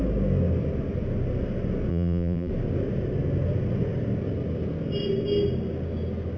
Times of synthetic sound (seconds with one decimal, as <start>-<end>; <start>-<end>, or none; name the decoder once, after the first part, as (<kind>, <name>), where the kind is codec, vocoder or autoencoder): 1.9-2.5 (vocoder, BigVGAN v2)

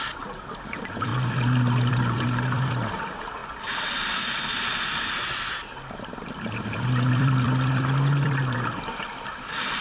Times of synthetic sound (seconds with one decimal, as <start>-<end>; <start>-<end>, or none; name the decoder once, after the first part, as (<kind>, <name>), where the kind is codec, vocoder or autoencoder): 0.0-1.1 (vocoder, BigVGAN v2); 1.9-3.4; 4.7-9.8

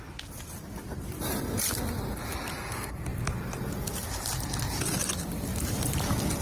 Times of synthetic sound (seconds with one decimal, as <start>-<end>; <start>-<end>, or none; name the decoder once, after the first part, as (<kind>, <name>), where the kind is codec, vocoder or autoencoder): 5.5-6.0 (vocoder, BigVGAN v2)

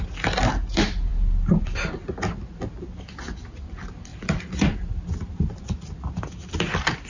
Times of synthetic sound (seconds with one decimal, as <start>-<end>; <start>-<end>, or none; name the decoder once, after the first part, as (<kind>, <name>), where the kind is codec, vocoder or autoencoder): 4.1-4.9 (vocoder, BigVGAN v2)